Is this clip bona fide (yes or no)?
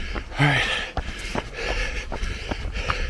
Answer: yes